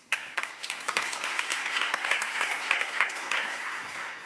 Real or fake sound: fake